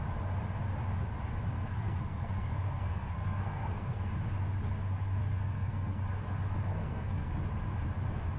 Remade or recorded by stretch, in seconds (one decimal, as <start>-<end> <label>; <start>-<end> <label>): 0.0-1.5 recorded; 1.5-4.1 remade; 4.1-5.2 recorded; 5.2-6.0 remade; 6.0-6.7 recorded; 6.7-7.3 remade; 7.3-8.4 recorded